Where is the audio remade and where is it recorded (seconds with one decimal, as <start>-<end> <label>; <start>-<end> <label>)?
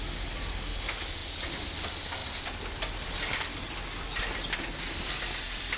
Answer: 0.0-2.2 recorded; 2.2-5.8 remade